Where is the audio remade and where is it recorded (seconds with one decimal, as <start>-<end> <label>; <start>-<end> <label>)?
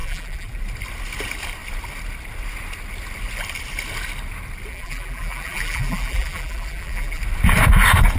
0.0-0.6 remade; 0.6-4.7 recorded; 4.7-7.2 remade; 7.2-8.2 recorded